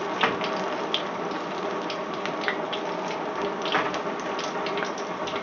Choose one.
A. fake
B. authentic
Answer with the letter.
B